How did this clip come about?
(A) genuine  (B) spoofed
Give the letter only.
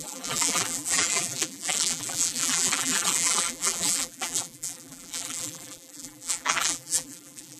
B